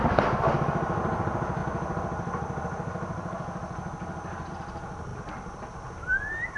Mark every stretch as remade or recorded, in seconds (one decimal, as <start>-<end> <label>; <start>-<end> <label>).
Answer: 0.0-6.6 recorded